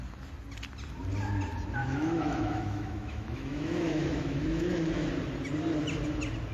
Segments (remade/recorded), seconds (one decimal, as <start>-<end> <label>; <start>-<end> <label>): 0.0-1.8 recorded; 1.8-5.1 remade; 5.1-6.5 recorded